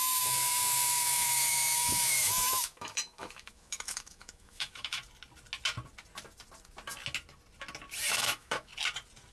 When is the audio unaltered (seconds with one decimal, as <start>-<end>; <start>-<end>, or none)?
5.0-8.1; 8.7-9.3